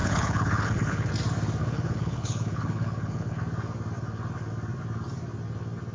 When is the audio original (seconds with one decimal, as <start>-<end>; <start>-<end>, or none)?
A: 1.1-1.6; 3.4-5.9